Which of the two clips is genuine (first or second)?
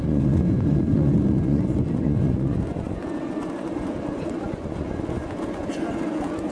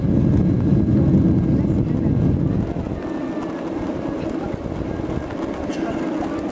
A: second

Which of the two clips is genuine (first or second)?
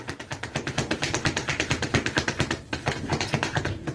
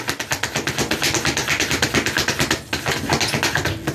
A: second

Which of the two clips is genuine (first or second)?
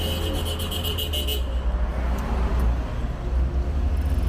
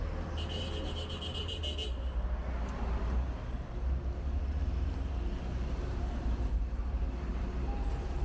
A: first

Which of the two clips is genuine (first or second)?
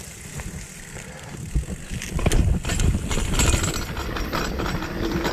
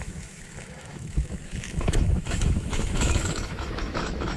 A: first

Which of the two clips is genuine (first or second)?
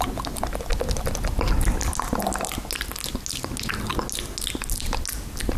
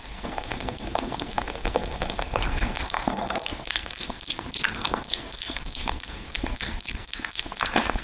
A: first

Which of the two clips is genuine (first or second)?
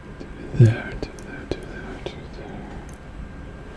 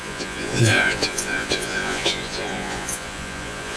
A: first